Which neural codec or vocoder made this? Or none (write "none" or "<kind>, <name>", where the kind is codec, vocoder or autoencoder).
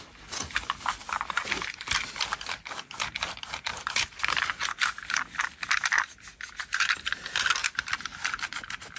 none